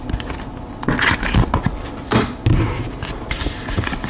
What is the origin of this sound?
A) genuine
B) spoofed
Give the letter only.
A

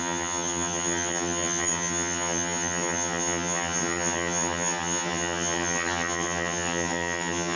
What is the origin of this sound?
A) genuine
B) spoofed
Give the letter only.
B